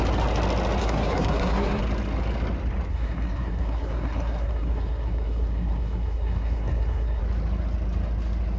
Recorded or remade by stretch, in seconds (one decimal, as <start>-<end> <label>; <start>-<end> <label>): 0.0-0.8 recorded; 0.8-1.8 remade; 1.8-2.9 recorded; 2.9-7.2 remade; 7.2-8.6 recorded